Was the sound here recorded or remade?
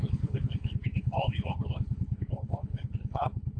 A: remade